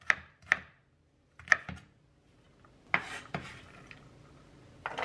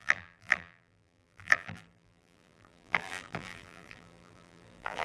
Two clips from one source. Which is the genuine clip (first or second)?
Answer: first